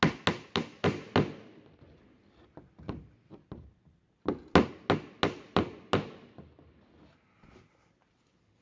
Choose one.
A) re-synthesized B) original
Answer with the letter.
B